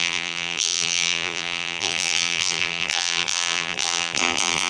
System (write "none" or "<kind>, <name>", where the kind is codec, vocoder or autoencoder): vocoder, BigVGAN v2